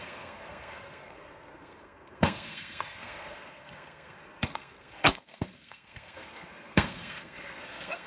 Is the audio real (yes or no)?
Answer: no